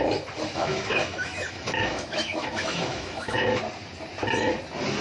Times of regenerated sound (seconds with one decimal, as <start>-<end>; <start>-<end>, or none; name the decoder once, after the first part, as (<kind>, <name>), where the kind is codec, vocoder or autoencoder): 0.6-3.6 (autoencoder, DAC-VAE)

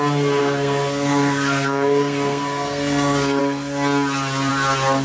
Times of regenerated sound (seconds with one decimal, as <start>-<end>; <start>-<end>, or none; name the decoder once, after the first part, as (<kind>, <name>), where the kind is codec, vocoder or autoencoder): 0.4-3.4 (codec, SNAC)